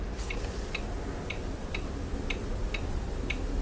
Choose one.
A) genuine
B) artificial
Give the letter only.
A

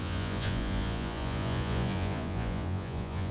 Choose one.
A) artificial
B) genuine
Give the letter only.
A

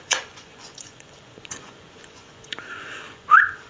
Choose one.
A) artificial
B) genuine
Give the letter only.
A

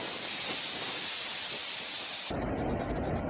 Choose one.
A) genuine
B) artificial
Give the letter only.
A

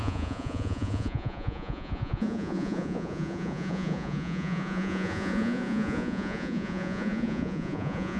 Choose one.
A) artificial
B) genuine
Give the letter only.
A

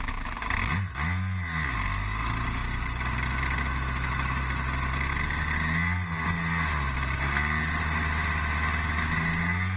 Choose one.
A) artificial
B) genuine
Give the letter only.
B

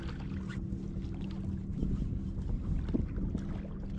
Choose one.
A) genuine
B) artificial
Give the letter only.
A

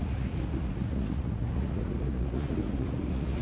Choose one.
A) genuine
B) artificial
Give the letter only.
B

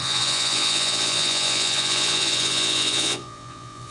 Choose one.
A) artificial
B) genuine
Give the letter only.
A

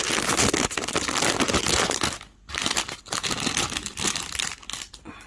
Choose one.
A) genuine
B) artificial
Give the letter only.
A